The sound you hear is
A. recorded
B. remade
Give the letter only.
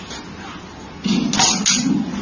A